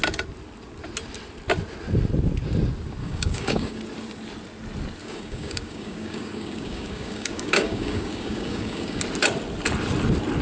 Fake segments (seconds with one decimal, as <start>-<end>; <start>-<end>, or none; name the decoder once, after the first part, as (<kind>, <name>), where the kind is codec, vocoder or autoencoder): 3.0-3.8 (codec, DAC); 5.0-9.0